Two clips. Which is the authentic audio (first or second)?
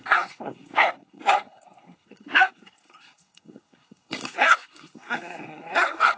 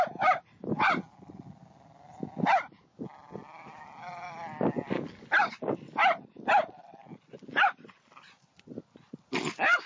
second